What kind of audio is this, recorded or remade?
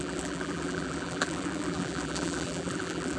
remade